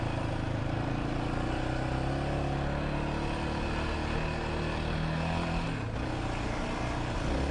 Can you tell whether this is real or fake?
real